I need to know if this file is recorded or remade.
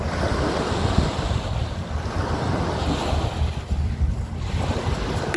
recorded